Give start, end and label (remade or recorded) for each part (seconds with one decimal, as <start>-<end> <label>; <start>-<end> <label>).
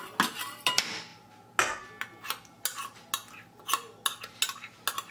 0.0-5.1 recorded